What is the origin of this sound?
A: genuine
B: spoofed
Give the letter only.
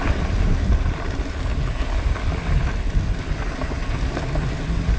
A